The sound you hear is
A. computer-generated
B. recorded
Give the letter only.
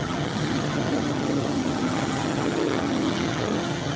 A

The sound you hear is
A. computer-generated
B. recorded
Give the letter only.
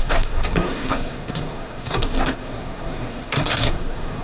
A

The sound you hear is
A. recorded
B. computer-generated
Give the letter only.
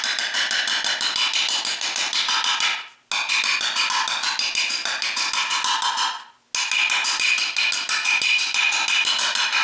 A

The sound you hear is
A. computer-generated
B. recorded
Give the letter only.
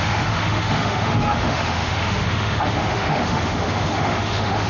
A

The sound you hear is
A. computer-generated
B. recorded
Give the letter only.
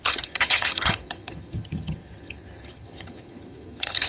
A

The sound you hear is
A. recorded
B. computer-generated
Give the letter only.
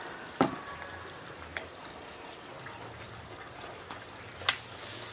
A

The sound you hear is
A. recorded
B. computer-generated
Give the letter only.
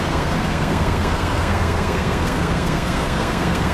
B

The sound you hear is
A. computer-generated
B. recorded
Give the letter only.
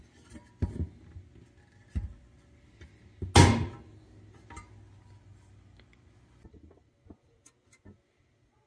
B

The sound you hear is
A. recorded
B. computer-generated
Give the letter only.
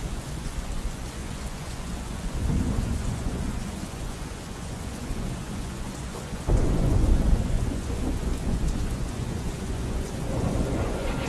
B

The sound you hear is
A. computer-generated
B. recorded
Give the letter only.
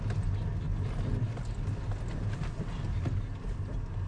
B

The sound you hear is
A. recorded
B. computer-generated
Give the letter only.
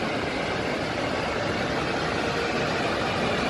A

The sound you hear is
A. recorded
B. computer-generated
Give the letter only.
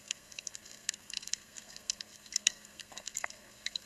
B